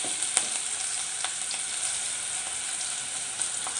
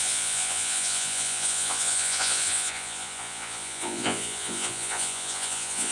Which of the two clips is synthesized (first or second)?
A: second